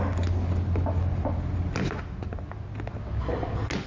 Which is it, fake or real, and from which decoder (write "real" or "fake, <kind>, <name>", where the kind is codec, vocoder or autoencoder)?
real